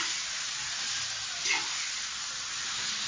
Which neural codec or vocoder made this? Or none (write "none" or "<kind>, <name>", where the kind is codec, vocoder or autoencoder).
none